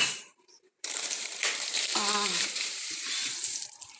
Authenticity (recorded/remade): remade